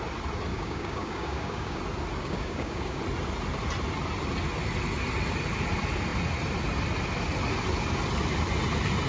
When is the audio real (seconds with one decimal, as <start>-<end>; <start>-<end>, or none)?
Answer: 0.0-0.5; 1.8-2.2; 3.0-9.1